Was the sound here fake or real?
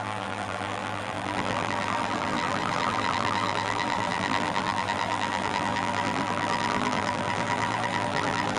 fake